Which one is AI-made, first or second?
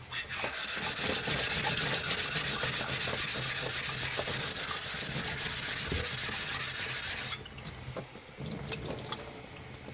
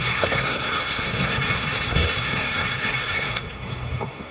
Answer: second